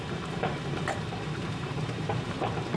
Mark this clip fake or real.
fake